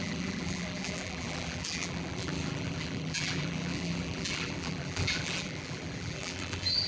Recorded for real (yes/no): no